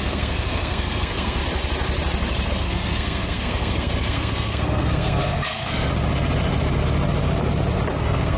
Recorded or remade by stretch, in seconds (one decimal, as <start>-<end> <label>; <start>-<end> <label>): 0.0-1.4 remade; 1.4-2.5 recorded; 2.5-5.9 remade; 5.9-8.0 recorded; 8.0-8.4 remade